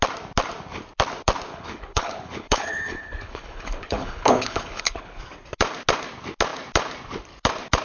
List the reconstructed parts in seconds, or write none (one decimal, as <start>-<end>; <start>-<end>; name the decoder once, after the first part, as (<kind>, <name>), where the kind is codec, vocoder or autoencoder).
1.5-5.2 (codec, HILCodec)